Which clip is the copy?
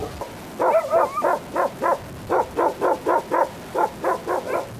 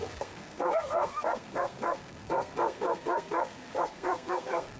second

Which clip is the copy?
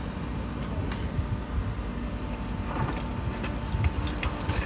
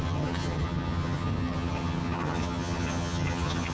second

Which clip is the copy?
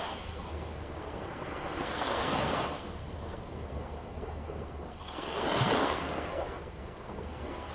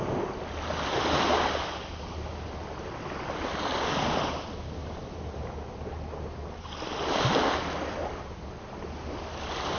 first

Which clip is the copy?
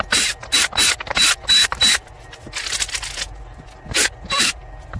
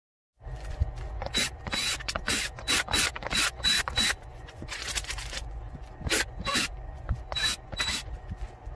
second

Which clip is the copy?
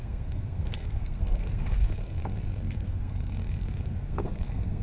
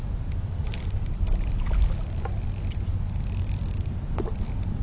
first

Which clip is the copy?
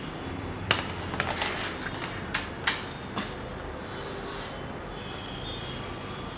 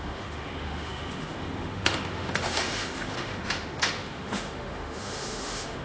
second